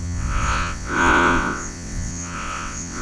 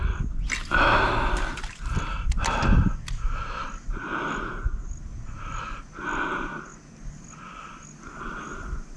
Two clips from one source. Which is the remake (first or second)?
first